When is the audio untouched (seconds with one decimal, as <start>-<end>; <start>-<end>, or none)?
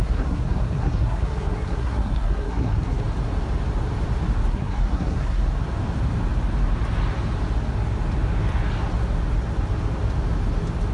3.0-4.5; 5.4-10.9